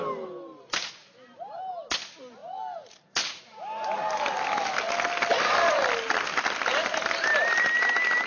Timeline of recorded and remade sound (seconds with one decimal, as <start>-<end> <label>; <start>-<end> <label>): 0.0-8.3 recorded